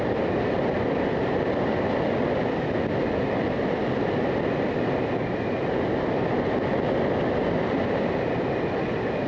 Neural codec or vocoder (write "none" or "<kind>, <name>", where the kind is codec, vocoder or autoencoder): none